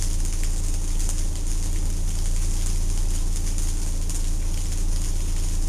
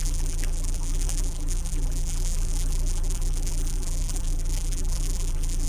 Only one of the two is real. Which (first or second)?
first